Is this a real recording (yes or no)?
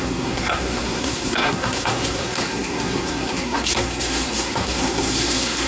no